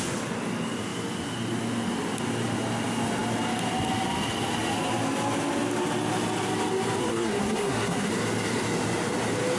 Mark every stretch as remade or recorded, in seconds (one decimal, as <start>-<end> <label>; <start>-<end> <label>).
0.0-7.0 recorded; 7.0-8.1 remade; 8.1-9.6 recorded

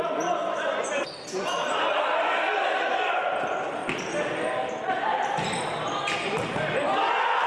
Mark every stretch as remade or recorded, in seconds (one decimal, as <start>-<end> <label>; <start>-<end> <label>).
0.0-0.4 recorded; 0.4-0.9 remade; 0.9-7.5 recorded

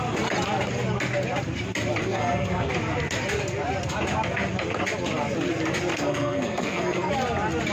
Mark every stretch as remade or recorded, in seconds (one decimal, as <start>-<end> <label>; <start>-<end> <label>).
0.0-2.0 recorded; 2.0-2.7 remade; 2.7-5.9 recorded; 5.9-7.1 remade; 7.1-7.7 recorded

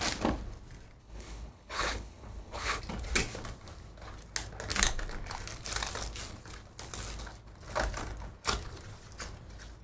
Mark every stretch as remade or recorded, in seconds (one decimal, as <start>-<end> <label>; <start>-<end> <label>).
0.0-1.0 recorded; 1.0-2.8 remade; 2.8-9.8 recorded

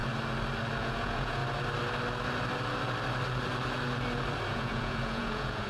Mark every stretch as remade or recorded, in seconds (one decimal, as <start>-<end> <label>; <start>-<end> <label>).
0.0-0.8 recorded; 0.8-1.4 remade; 1.4-4.5 recorded; 4.5-5.7 remade

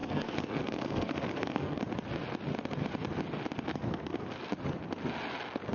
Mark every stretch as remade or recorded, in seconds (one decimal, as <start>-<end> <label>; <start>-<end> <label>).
0.0-1.8 remade; 1.8-3.7 recorded; 3.7-4.4 remade; 4.4-5.7 recorded

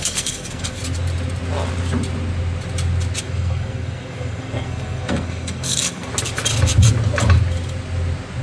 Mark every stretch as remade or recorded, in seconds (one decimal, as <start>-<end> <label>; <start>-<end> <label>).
0.0-0.8 remade; 0.8-3.2 recorded; 3.2-6.1 remade; 6.1-8.4 recorded